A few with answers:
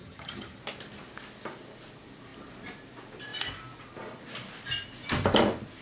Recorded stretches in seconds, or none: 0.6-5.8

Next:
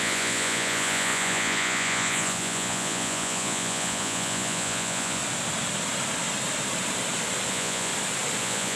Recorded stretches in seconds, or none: 5.2-7.5; 7.9-8.4